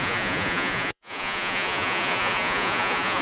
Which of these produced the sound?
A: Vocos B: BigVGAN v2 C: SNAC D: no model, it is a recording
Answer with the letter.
A